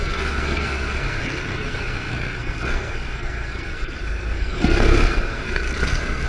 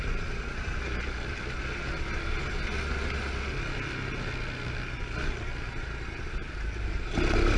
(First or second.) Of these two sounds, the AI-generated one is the first